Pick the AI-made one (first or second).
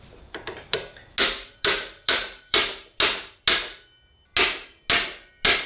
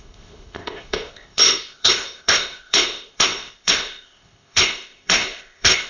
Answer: second